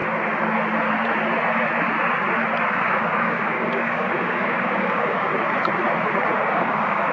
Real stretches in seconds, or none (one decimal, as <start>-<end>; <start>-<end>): 0.0-2.7; 5.3-6.4